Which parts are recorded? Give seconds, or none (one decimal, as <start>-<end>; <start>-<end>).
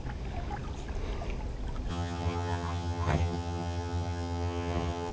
0.0-1.9